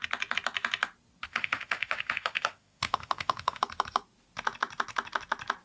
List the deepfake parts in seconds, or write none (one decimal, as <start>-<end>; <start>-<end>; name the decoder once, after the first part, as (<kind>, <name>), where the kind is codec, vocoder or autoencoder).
1.3-3.6 (autoencoder, DAC-VAE)